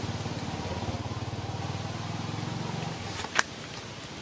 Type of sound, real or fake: real